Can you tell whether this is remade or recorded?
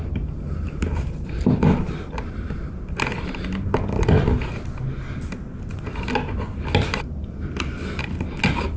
recorded